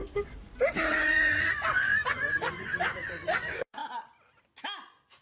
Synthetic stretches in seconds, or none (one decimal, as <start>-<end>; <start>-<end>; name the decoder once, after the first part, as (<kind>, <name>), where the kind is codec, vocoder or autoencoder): 0.9-3.8 (vocoder, Vocos)